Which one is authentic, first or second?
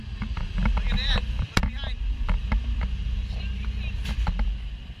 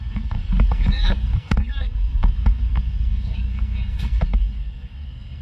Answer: first